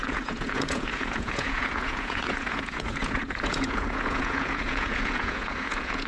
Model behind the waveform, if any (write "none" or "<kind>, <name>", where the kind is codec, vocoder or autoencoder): vocoder, Vocos